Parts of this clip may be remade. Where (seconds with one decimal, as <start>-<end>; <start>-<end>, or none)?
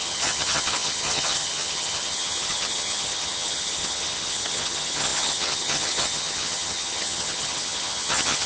0.0-8.5